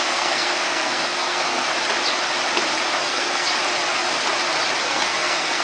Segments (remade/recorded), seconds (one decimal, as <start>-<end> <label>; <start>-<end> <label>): 0.0-1.7 remade; 1.7-3.0 recorded; 3.0-3.6 remade; 3.6-4.8 recorded; 4.8-5.6 remade